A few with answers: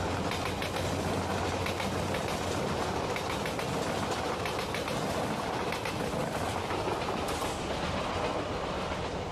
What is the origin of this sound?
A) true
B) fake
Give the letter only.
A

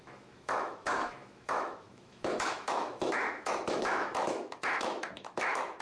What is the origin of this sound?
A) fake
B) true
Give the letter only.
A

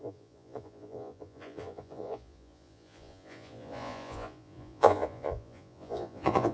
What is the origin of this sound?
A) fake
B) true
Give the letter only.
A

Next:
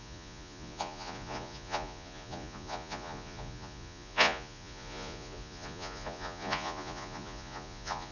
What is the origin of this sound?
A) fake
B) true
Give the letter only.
A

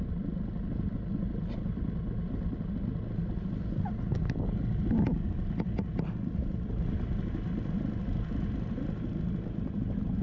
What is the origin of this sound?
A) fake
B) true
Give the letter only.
B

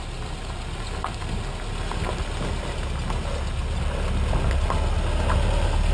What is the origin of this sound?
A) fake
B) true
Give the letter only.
B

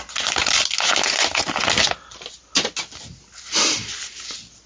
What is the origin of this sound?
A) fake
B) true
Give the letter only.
B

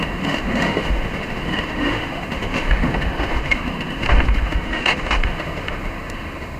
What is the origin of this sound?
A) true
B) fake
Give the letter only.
B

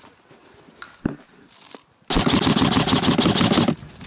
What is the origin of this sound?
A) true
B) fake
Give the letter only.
A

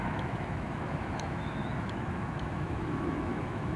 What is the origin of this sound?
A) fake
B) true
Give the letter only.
A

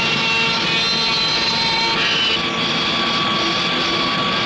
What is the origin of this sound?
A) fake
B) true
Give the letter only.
B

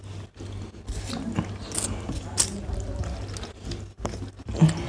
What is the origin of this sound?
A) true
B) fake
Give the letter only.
A